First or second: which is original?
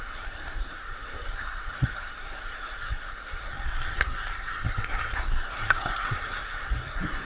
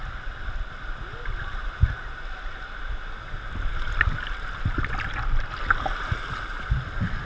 second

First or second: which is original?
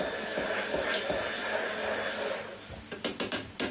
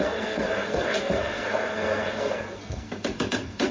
first